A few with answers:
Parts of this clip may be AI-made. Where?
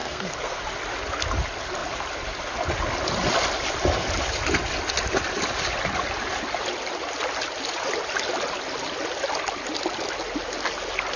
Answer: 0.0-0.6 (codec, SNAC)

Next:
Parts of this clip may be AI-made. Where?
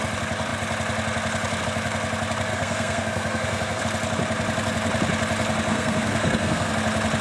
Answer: 2.5-3.8 (codec, SNAC); 5.7-6.7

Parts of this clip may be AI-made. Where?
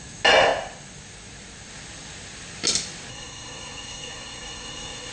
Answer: 3.1-5.1 (codec, SNAC)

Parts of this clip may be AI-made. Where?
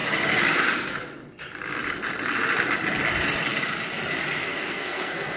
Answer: 4.4-5.4 (codec, SNAC)